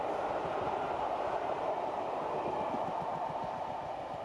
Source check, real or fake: real